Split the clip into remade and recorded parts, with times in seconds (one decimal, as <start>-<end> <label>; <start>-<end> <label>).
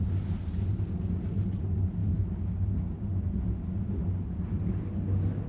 0.0-5.5 recorded